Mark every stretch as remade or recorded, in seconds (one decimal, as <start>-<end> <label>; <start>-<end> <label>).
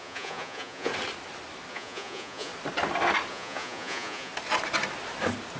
0.0-0.9 remade; 0.9-1.7 recorded; 1.7-2.5 remade; 2.5-3.3 recorded; 3.3-4.3 remade; 4.3-5.6 recorded